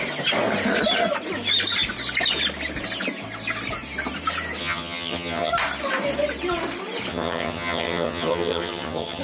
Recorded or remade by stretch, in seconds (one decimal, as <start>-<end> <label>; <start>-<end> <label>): 0.0-4.6 recorded; 4.6-5.5 remade; 5.5-7.1 recorded; 7.1-9.2 remade